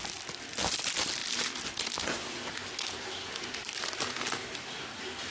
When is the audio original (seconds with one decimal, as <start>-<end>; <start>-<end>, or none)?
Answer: 0.0-5.3